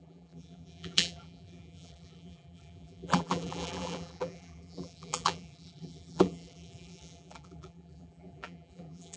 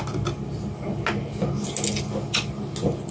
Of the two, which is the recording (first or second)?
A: second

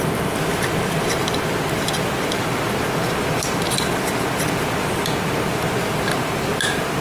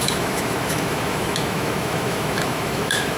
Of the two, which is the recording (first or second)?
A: first